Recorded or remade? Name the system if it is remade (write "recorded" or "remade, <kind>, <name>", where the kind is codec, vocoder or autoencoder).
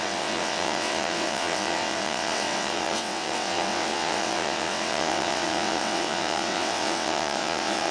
remade, vocoder, WaveNeXt